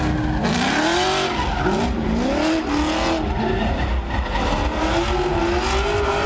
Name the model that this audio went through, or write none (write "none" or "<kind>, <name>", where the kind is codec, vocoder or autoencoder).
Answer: none